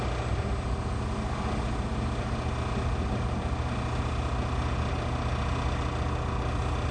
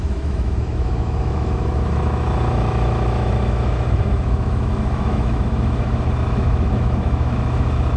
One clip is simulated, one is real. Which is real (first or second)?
first